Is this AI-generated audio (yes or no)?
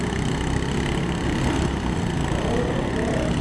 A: no